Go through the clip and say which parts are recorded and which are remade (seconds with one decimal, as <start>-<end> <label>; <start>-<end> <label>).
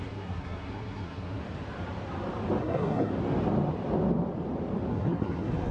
0.0-1.4 remade; 1.4-2.6 recorded; 2.6-3.1 remade; 3.1-4.9 recorded; 4.9-5.7 remade